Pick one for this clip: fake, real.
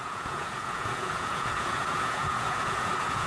fake